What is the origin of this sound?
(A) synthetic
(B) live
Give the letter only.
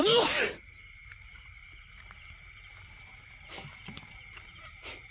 A